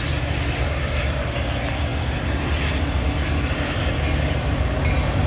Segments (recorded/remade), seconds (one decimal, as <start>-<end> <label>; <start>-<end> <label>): 0.0-5.3 recorded